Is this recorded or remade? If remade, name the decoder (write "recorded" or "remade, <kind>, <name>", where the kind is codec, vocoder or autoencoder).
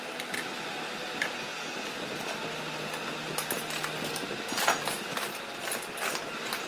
recorded